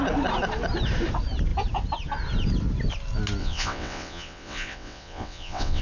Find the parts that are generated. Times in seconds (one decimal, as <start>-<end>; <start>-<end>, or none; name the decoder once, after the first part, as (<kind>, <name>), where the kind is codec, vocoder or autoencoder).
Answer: 3.4-5.8 (vocoder, WaveNeXt)